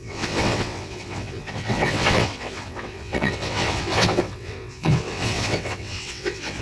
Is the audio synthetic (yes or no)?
yes